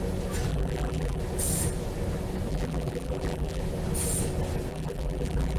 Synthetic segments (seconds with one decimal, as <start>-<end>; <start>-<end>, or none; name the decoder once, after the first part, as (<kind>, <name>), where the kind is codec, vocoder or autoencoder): 0.5-1.2 (vocoder, BigVGAN v2); 2.5-3.6; 4.7-5.6